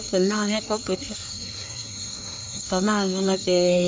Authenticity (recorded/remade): remade